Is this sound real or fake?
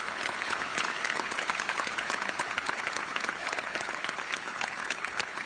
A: fake